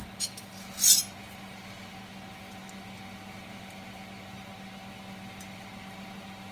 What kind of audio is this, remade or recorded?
recorded